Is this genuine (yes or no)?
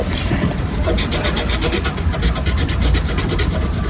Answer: yes